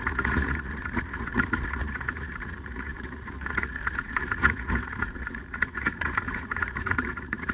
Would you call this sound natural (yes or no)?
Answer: no